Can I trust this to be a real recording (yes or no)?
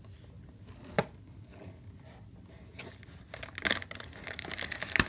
yes